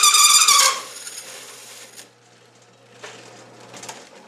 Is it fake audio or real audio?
real